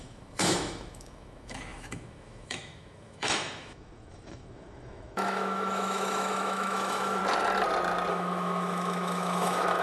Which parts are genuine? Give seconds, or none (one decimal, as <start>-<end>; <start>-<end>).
7.2-8.1